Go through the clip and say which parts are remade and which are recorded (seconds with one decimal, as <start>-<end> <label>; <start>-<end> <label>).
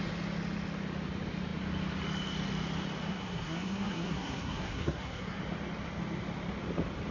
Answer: 0.0-3.1 recorded; 3.1-5.4 remade; 5.4-7.1 recorded